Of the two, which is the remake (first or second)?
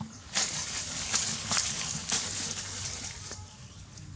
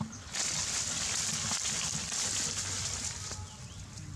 first